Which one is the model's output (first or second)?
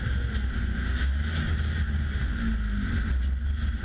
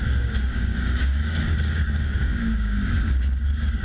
second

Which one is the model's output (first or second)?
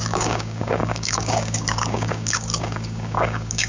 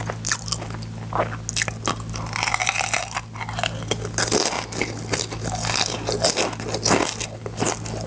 first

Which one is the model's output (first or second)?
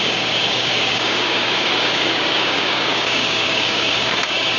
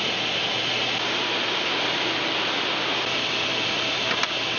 first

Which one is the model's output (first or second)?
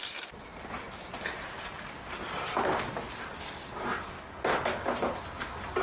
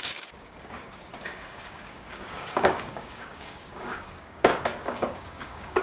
second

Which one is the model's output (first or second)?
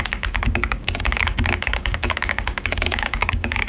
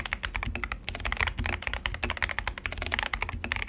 first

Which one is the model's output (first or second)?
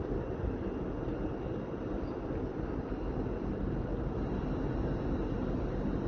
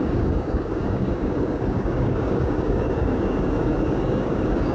second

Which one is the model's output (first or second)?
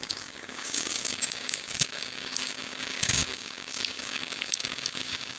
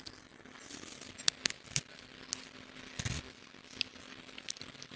first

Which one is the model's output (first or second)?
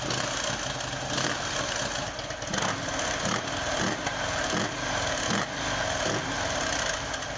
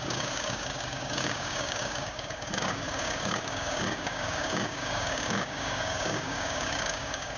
second